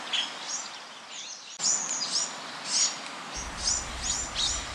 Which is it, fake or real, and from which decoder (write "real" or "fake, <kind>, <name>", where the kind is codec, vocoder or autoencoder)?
real